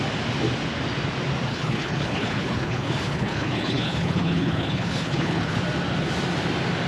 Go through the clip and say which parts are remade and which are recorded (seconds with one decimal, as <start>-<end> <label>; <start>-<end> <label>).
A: 0.0-1.5 recorded; 1.5-5.6 remade; 5.6-6.9 recorded